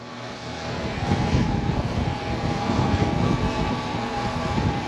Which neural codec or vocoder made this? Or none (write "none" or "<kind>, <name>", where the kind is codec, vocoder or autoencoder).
codec, SNAC